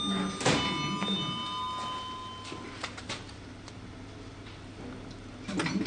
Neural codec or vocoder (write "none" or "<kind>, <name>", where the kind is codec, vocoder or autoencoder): none